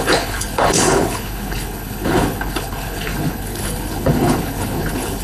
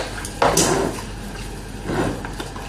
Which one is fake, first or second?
first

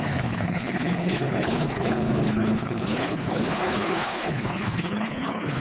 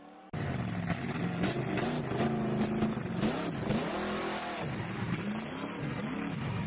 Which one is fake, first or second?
first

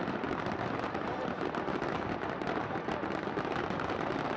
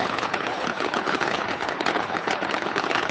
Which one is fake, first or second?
second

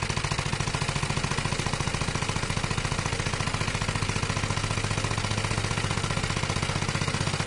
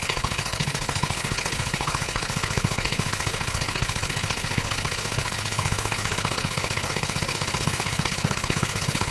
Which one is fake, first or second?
second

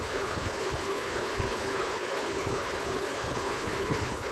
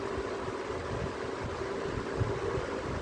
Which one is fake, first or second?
first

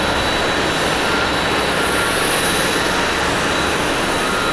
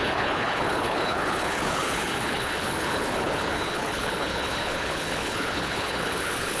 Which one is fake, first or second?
second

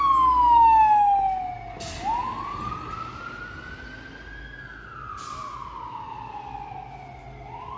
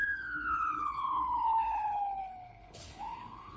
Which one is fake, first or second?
second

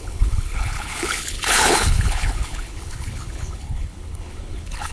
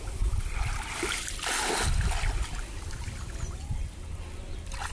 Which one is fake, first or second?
first